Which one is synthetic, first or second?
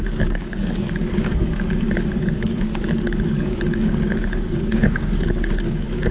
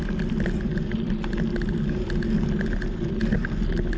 first